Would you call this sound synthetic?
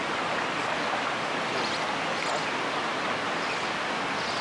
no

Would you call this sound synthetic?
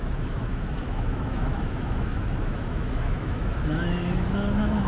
yes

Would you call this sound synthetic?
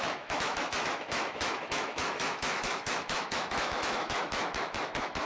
yes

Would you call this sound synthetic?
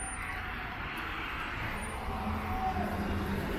no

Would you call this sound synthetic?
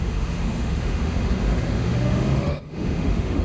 yes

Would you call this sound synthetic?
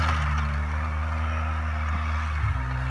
no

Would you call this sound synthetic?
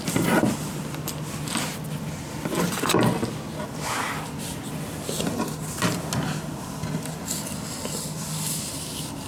no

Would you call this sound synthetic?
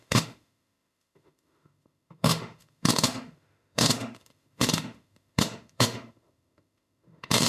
yes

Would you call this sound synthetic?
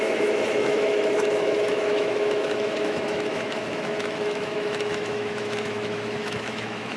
yes